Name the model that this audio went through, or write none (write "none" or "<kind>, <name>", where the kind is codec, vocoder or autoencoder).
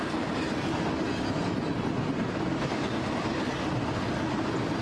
none